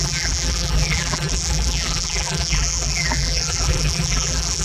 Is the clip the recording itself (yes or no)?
no